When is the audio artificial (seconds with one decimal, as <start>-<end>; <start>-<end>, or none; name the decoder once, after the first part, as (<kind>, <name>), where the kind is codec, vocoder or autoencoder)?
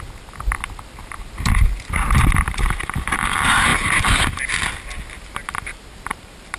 0.0-3.7 (vocoder, BigVGAN v2); 4.4-6.6